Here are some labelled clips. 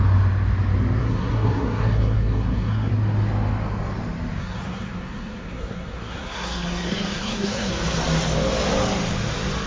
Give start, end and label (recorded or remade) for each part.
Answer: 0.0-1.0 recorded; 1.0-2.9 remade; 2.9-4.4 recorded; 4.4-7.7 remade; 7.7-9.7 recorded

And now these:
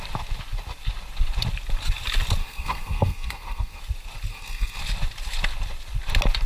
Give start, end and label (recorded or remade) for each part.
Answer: 0.0-2.4 recorded; 2.4-3.8 remade; 3.8-4.3 recorded; 4.3-4.8 remade; 4.8-6.5 recorded

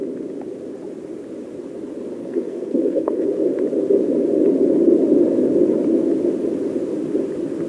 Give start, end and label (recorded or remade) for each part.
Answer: 0.0-2.2 recorded; 2.2-3.3 remade; 3.3-7.7 recorded

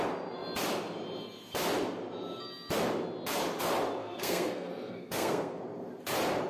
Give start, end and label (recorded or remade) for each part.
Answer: 0.0-4.0 recorded; 4.0-5.6 remade; 5.6-6.5 recorded

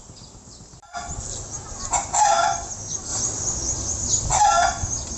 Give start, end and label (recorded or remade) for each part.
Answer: 0.0-5.2 recorded

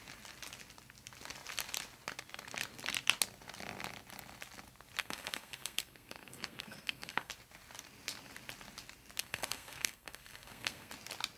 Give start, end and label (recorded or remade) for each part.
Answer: 0.0-5.0 recorded; 5.0-7.3 remade; 7.3-9.2 recorded; 9.2-10.9 remade; 10.9-11.4 recorded